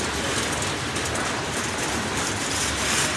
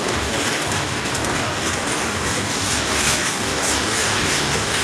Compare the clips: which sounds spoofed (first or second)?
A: second